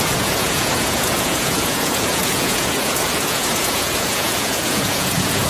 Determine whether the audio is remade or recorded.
remade